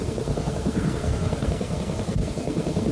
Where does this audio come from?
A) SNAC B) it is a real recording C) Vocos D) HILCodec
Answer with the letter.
A